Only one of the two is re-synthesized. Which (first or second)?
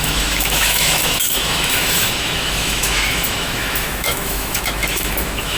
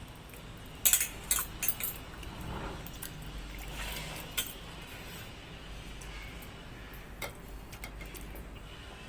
first